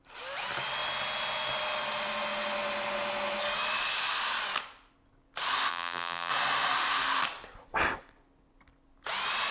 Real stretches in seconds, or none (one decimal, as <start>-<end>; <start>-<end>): 0.0-5.7; 6.3-9.5